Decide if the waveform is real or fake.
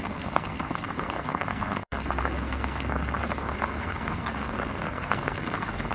fake